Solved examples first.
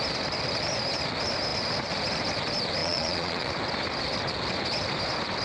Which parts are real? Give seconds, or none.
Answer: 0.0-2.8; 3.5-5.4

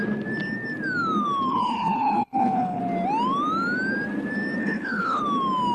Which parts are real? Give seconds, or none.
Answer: 0.0-1.5; 2.8-4.6; 5.2-5.7

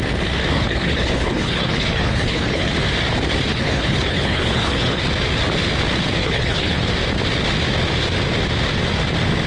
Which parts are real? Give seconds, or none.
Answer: 0.0-0.5; 2.7-3.5; 5.0-6.2; 6.8-9.5